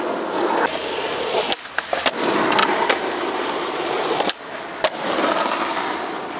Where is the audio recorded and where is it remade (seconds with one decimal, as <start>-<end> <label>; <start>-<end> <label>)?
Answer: 0.0-2.6 recorded; 2.6-4.1 remade; 4.1-6.4 recorded